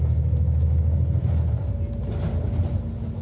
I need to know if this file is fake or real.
real